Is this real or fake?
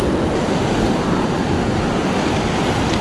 real